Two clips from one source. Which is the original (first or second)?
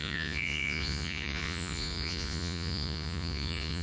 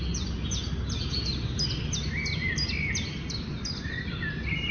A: second